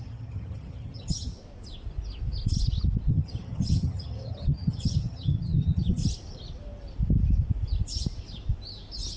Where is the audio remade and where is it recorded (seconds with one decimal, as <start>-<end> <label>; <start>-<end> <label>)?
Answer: 0.0-1.3 remade; 1.3-3.1 recorded; 3.1-6.0 remade; 6.0-9.2 recorded